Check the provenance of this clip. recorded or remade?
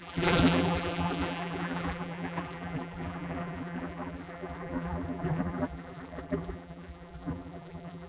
remade